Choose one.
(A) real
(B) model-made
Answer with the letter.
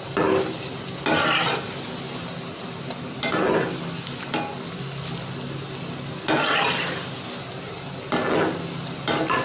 A